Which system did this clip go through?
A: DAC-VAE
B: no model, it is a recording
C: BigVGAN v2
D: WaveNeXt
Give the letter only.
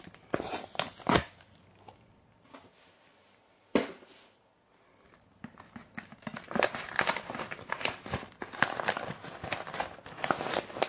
B